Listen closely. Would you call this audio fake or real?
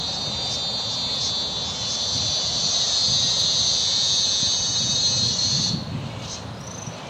real